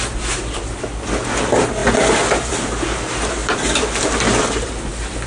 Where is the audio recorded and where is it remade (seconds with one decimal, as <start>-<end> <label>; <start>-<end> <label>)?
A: 0.0-5.3 recorded